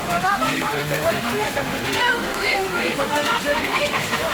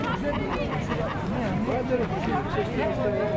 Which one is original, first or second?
second